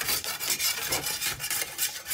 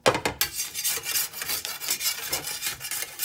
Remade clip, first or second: first